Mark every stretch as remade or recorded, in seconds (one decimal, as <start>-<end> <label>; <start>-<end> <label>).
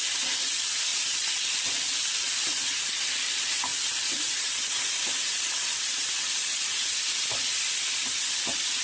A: 0.0-0.9 recorded; 0.9-2.7 remade; 2.7-3.7 recorded; 3.7-5.5 remade; 5.5-8.8 recorded